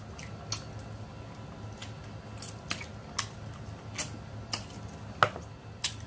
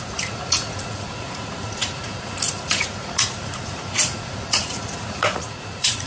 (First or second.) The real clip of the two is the first